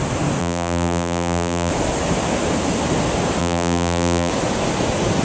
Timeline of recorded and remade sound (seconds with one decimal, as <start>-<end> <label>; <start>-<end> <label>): 0.0-0.4 recorded; 0.4-1.7 remade; 1.7-3.4 recorded; 3.4-4.3 remade; 4.3-5.2 recorded